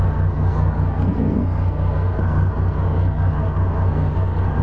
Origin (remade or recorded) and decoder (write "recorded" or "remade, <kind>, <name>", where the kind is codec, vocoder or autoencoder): remade, codec, SNAC